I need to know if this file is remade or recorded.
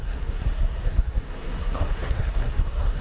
remade